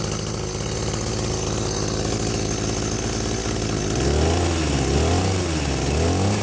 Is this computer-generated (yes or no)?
no